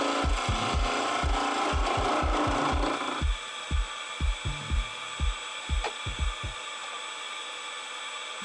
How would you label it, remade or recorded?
recorded